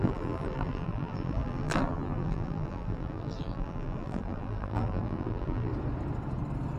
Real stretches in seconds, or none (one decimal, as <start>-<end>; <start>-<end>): 5.7-6.8